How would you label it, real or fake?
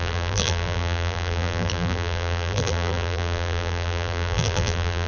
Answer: fake